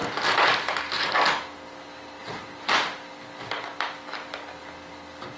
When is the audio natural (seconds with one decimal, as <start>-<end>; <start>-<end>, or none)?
0.0-5.4